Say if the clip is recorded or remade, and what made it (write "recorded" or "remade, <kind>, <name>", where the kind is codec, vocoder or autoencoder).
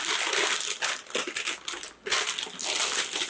recorded